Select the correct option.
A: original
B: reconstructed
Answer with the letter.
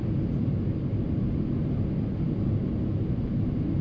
A